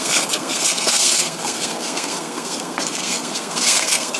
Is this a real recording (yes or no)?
no